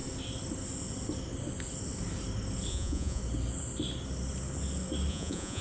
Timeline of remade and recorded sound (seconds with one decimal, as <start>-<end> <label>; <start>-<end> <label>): 0.0-2.7 recorded; 2.7-3.2 remade; 3.2-5.1 recorded; 5.1-5.6 remade